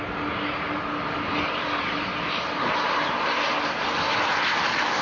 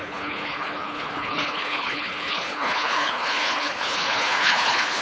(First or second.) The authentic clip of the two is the first